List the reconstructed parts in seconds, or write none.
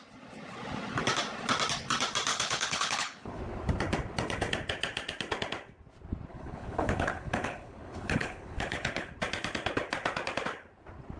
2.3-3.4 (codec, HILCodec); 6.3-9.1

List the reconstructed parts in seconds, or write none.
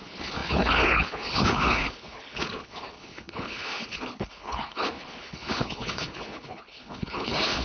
0.0-7.6 (codec, HILCodec)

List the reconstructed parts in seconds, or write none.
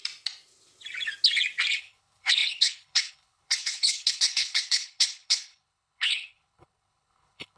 1.8-7.6 (codec, HILCodec)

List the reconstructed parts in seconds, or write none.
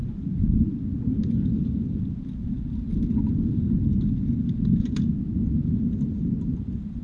none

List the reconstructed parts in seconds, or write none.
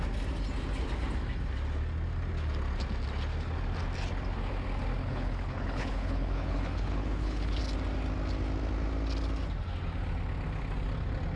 5.0-7.6 (codec, HILCodec)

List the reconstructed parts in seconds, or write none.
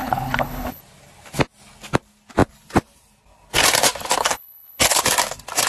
0.0-0.8 (codec, HILCodec); 4.2-5.0